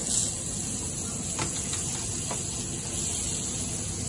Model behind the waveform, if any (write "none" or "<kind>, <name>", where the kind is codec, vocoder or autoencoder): none